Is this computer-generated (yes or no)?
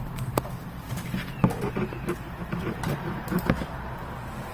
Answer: no